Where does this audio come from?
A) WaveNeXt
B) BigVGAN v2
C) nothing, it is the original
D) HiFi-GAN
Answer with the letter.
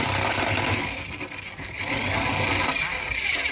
C